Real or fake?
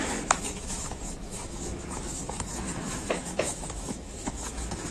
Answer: fake